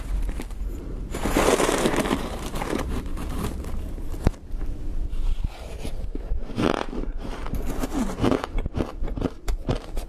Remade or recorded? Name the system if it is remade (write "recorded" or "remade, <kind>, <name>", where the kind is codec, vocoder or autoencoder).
remade, vocoder, BigVGAN v2